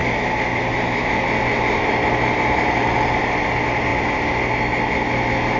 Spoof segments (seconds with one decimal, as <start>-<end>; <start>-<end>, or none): none

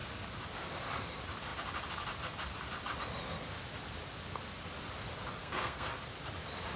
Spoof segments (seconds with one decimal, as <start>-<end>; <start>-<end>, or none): 5.4-5.9

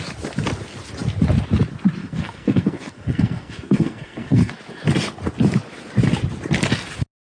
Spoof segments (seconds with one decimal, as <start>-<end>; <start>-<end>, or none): 2.0-4.5

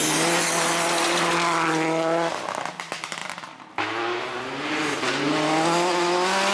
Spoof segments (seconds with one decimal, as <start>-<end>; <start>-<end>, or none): none

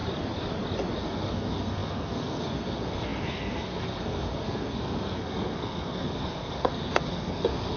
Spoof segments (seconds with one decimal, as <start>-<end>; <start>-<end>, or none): 1.0-7.8

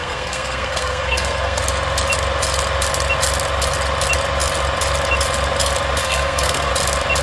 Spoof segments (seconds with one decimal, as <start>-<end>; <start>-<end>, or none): 0.0-1.6; 6.0-6.7

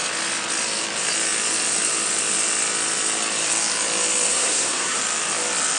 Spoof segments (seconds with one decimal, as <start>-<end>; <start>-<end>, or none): 4.3-5.0

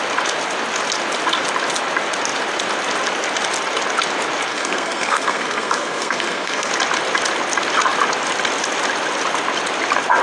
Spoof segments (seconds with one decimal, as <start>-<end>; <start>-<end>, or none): 4.5-6.7